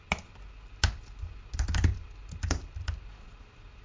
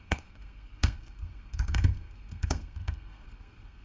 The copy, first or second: second